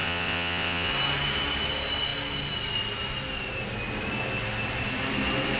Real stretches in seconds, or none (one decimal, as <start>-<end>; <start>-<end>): 0.9-5.6